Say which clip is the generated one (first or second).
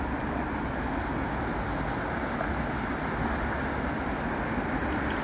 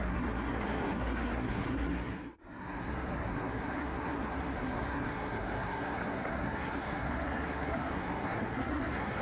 second